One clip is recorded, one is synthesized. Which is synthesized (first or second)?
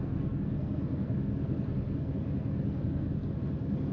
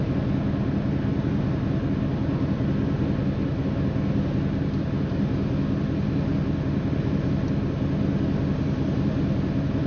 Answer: first